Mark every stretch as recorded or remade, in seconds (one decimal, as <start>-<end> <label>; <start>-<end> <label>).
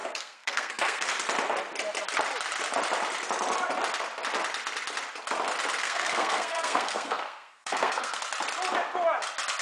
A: 0.0-1.1 remade; 1.1-5.8 recorded; 5.8-8.2 remade; 8.2-9.6 recorded